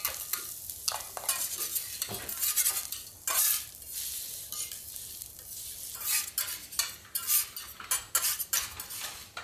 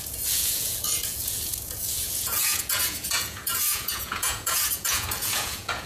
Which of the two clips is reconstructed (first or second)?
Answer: second